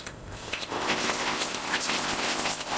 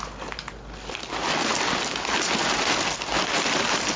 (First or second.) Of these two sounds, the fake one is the first